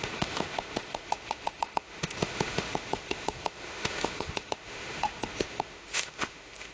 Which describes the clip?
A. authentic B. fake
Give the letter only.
B